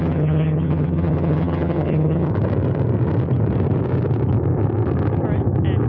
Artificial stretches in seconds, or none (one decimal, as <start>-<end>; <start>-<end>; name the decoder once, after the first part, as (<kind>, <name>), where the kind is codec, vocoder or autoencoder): 0.0-2.3 (vocoder, HiFi-GAN)